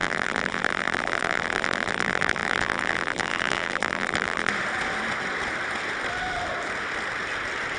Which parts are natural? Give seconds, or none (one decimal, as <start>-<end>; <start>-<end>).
4.5-7.8